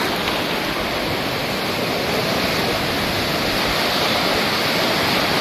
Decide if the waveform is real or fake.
real